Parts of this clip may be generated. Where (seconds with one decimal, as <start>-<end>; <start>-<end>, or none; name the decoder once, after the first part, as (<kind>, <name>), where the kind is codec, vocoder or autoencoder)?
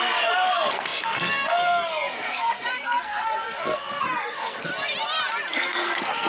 0.0-4.7 (codec, SNAC); 5.5-6.3